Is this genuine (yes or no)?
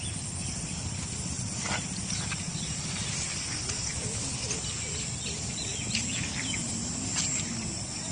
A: yes